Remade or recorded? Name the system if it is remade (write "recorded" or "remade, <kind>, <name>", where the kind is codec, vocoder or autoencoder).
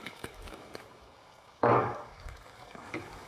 remade, codec, DAC